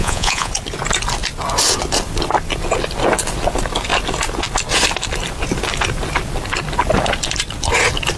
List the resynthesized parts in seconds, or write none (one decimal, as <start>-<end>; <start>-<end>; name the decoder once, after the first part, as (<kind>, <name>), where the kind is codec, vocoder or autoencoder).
0.0-0.5 (vocoder, Vocos)